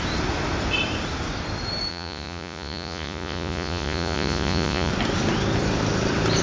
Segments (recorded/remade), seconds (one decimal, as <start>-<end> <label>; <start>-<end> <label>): 0.0-1.9 recorded; 1.9-4.9 remade; 4.9-6.4 recorded